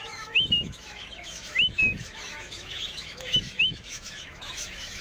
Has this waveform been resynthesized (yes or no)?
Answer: yes